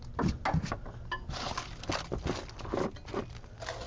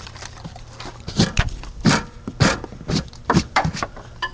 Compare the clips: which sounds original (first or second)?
first